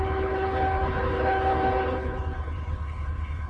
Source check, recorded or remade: remade